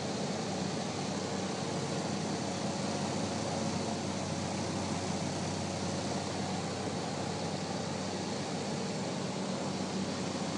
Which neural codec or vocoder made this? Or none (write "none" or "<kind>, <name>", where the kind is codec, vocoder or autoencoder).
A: none